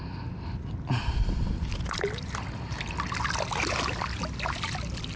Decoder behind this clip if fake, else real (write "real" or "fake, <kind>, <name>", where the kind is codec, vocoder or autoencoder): real